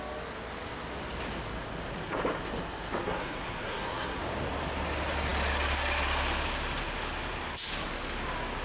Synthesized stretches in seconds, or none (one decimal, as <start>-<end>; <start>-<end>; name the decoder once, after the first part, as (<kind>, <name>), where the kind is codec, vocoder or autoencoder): 3.0-4.2 (codec, SNAC)